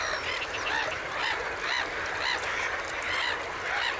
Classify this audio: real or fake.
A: real